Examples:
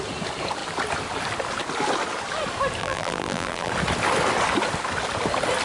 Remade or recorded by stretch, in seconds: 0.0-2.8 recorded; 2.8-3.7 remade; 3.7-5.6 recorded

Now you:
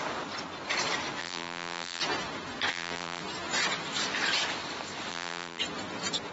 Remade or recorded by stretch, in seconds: 0.0-1.2 recorded; 1.2-2.0 remade; 2.0-2.7 recorded; 2.7-3.2 remade; 3.2-5.1 recorded; 5.1-5.6 remade; 5.6-6.3 recorded

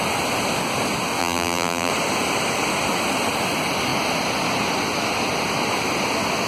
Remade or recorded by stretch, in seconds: 0.0-1.2 recorded; 1.2-1.9 remade; 1.9-6.5 recorded

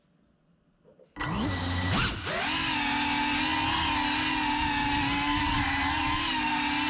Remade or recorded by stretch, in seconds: 0.0-6.9 recorded

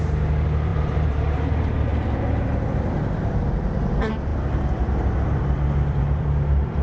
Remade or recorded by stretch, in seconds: 0.0-6.8 remade